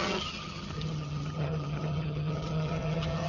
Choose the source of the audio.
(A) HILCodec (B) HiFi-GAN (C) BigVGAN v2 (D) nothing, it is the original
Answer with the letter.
B